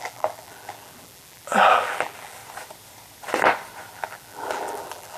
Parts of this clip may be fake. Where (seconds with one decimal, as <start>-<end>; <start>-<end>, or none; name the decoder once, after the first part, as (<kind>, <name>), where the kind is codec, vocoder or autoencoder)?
0.0-2.4 (vocoder, BigVGAN v2); 3.9-5.2